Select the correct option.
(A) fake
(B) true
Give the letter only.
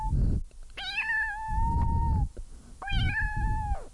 B